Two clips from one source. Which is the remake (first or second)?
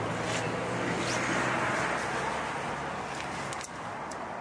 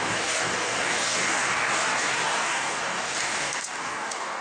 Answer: second